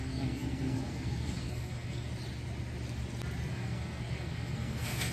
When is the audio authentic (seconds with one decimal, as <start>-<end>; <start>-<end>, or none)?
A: 2.1-3.5